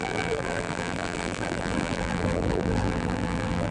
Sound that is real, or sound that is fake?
fake